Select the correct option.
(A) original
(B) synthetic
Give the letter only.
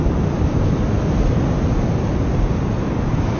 A